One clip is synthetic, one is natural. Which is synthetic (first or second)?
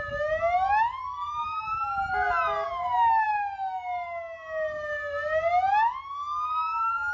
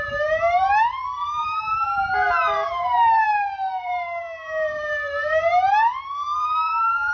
second